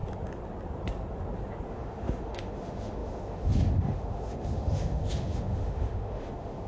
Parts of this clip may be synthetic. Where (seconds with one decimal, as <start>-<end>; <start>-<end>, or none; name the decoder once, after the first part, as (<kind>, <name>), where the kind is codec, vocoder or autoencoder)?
1.7-6.7 (autoencoder, DAC-VAE)